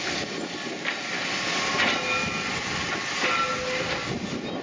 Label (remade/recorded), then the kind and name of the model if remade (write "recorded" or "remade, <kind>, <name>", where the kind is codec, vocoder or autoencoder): recorded